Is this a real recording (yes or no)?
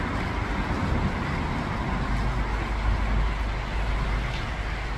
yes